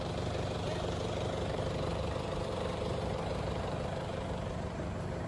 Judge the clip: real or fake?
fake